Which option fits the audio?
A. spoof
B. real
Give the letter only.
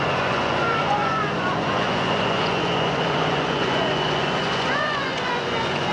A